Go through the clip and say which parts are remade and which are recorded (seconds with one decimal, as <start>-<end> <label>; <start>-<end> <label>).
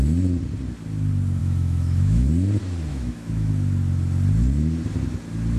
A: 0.0-1.4 recorded; 1.4-2.3 remade; 2.3-2.9 recorded; 2.9-3.5 remade; 3.5-5.6 recorded